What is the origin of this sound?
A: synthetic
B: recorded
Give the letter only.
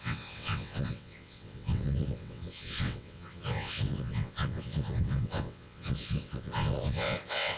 A